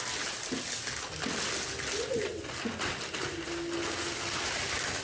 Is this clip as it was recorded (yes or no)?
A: yes